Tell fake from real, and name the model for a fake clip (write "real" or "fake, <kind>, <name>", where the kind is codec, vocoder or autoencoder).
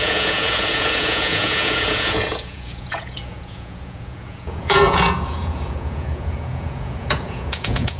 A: fake, vocoder, Vocos